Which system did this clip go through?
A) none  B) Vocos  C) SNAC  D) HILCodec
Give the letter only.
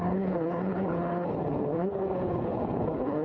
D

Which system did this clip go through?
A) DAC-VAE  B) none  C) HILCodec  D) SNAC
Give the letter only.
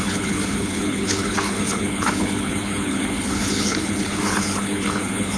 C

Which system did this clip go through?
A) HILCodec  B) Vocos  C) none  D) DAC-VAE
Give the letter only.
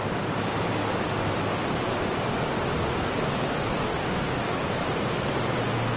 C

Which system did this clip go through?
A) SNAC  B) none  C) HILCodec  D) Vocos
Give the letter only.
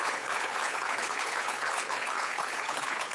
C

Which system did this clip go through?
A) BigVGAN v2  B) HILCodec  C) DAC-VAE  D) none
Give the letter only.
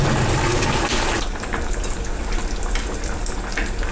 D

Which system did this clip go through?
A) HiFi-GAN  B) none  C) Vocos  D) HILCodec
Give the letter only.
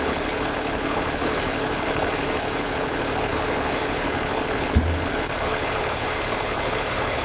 D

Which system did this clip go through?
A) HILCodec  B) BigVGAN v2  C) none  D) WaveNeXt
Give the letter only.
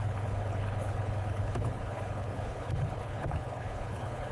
A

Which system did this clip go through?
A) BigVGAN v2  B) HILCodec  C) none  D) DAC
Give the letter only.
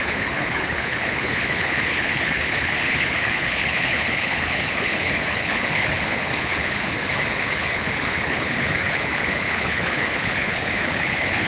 B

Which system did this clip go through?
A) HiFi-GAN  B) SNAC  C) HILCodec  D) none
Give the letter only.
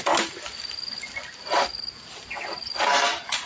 D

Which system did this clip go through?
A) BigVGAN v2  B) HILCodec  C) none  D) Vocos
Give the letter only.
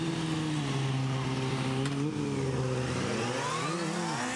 C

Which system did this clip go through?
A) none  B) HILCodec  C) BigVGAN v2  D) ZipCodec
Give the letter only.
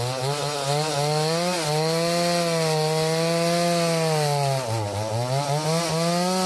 A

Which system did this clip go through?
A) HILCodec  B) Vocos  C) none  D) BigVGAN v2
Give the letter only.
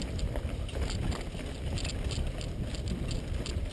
C